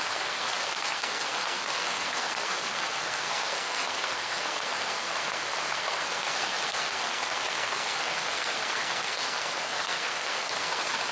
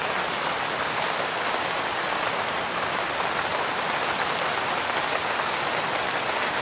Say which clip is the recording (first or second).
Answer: second